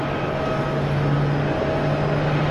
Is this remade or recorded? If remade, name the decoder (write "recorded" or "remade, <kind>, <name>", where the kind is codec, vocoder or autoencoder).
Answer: recorded